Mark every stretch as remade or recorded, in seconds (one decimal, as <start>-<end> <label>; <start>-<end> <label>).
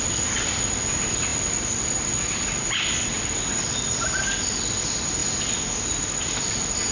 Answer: 0.0-6.9 recorded